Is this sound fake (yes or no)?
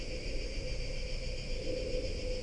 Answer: no